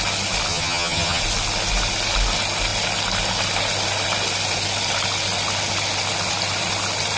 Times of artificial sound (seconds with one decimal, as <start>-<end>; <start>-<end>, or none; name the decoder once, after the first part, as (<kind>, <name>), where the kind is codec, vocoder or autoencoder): 0.5-1.2 (vocoder, HiFi-GAN)